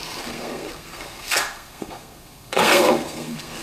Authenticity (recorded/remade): remade